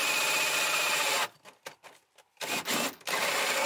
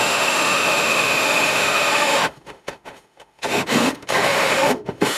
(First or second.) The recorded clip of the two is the first